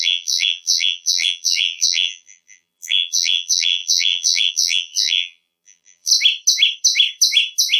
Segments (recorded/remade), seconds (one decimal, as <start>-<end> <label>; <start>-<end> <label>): 0.0-6.1 remade; 6.1-7.8 recorded